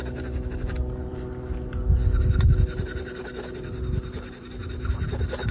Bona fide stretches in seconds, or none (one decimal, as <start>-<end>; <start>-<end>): 0.0-5.5